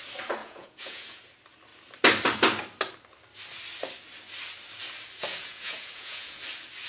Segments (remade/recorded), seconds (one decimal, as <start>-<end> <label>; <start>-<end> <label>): 0.0-0.4 recorded; 0.4-1.2 remade; 1.2-5.3 recorded; 5.3-6.4 remade; 6.4-6.9 recorded

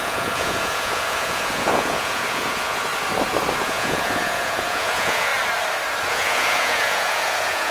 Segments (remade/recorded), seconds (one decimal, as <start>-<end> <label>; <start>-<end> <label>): 0.0-2.9 remade; 2.9-3.6 recorded; 3.6-5.3 remade; 5.3-6.1 recorded; 6.1-7.7 remade

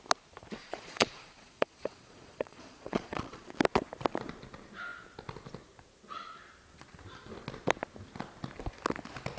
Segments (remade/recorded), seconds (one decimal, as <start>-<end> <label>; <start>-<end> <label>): 0.0-0.6 recorded; 0.6-3.5 remade; 3.5-9.4 recorded

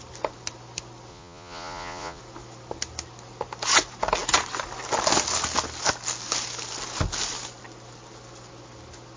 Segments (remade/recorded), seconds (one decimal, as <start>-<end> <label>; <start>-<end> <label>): 0.0-1.1 recorded; 1.1-2.2 remade; 2.2-9.2 recorded